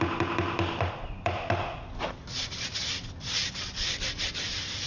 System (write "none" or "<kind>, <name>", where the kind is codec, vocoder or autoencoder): none